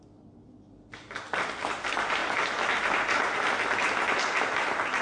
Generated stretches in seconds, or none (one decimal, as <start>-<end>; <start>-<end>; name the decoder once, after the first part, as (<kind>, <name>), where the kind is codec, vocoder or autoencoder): none